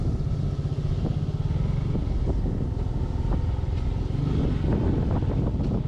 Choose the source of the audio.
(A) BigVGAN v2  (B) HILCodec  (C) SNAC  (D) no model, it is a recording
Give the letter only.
D